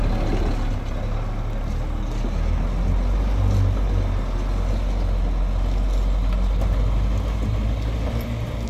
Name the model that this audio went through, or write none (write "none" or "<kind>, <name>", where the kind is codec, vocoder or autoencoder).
none